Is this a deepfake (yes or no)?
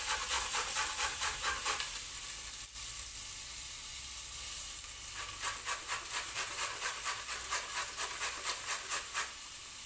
no